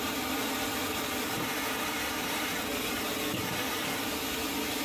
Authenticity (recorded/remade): remade